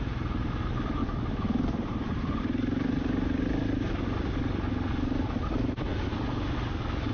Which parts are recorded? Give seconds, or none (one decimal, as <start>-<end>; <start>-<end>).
0.0-7.1